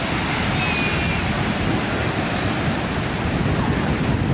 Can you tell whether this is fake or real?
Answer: real